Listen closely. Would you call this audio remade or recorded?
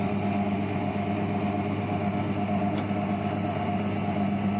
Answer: recorded